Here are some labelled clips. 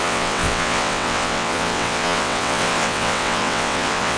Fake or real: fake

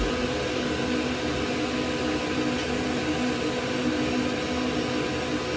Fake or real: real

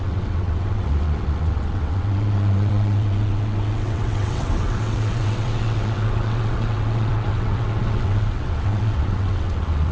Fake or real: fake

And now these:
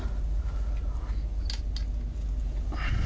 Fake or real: real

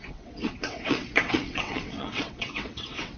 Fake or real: fake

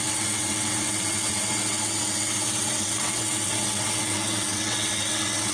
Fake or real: fake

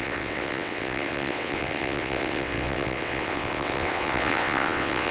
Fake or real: fake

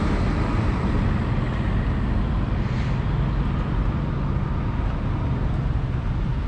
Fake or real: real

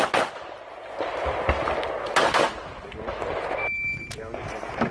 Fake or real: real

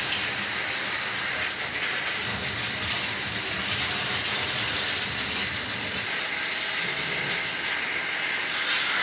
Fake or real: real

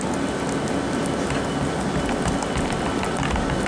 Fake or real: real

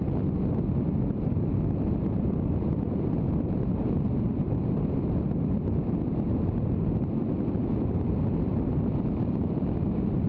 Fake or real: real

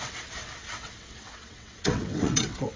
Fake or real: fake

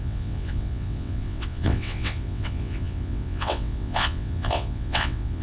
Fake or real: fake